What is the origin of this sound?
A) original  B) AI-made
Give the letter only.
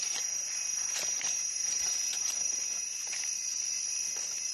A